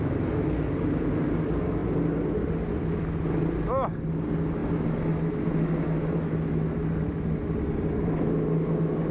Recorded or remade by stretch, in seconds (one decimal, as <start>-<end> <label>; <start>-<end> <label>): 0.0-9.1 recorded